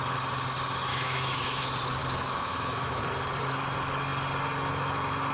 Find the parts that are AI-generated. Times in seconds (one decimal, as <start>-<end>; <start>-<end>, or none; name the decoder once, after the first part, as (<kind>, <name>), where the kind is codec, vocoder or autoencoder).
0.9-1.6 (autoencoder, DAC-VAE); 2.0-3.0